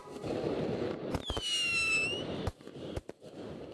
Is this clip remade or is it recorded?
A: recorded